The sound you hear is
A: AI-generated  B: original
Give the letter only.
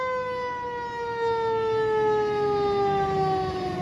B